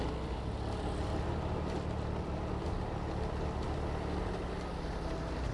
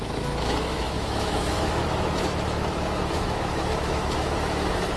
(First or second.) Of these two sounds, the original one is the first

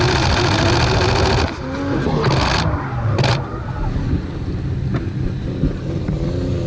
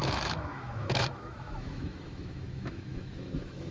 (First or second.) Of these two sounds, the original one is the first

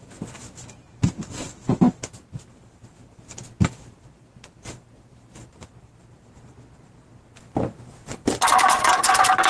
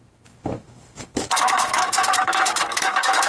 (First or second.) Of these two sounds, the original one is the first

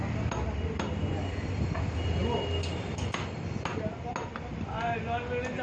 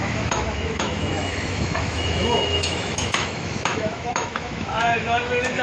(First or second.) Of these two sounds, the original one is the first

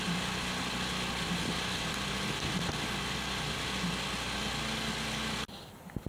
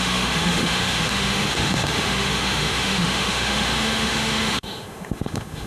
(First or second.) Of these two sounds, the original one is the first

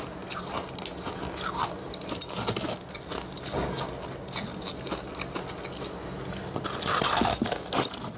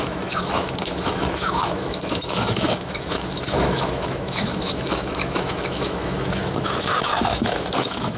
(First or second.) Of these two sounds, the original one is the first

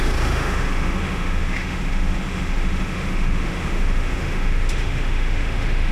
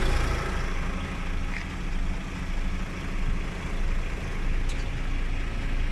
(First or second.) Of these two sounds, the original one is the second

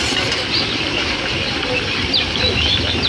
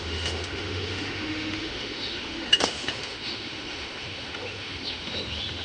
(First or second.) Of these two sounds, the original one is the first